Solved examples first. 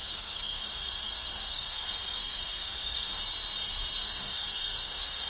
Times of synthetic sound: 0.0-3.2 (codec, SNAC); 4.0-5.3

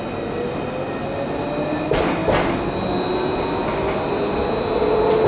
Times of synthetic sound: none